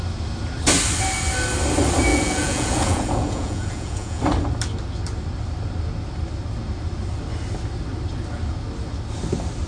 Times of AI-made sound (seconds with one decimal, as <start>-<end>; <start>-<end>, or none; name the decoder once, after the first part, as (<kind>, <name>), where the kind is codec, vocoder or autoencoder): 2.1-4.2 (vocoder, Vocos)